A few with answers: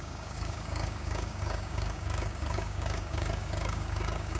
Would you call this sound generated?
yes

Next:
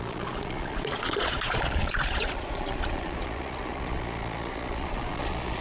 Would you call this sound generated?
yes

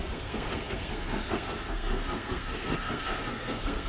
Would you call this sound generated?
yes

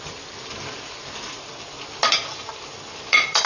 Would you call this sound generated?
no